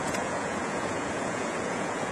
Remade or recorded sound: remade